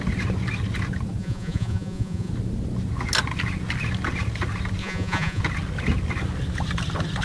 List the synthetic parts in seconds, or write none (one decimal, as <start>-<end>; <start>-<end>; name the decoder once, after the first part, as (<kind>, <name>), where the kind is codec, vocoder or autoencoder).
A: 1.2-2.3 (vocoder, Vocos); 4.8-5.4